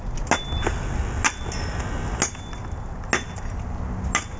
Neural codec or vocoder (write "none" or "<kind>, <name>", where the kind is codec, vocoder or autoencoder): none